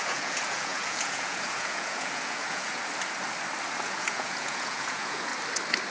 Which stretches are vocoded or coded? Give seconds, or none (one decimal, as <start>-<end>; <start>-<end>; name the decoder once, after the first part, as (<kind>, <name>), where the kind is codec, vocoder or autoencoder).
0.0-2.8 (vocoder, Vocos); 3.8-5.3